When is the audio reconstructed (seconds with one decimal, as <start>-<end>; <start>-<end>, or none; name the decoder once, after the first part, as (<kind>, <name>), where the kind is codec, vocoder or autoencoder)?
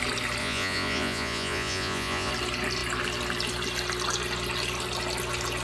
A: 0.4-2.3 (vocoder, Vocos)